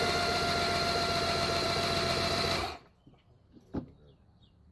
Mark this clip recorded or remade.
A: remade